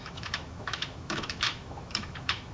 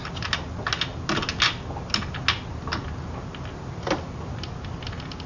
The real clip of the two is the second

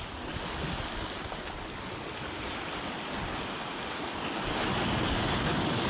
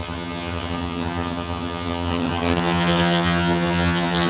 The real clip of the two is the first